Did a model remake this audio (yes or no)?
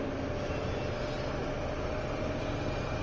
no